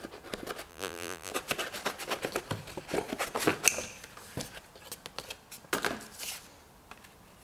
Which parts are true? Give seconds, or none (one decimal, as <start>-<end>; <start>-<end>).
0.0-0.7; 1.3-7.4